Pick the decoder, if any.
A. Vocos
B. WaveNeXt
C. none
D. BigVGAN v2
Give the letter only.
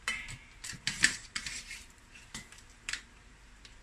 D